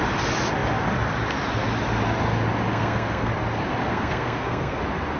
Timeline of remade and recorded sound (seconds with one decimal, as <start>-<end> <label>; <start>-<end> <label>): 0.0-2.7 recorded; 2.7-3.3 remade; 3.3-3.8 recorded; 3.8-4.8 remade; 4.8-5.2 recorded